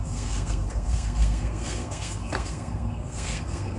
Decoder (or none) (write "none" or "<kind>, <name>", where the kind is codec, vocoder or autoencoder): codec, SNAC